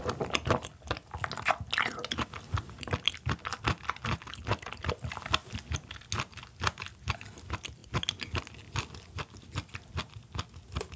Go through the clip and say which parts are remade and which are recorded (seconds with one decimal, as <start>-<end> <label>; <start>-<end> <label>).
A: 0.0-11.0 recorded